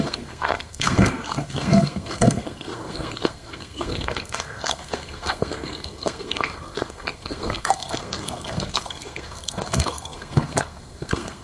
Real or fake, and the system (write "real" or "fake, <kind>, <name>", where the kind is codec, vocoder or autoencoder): fake, codec, SNAC